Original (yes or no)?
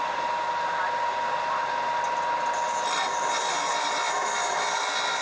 yes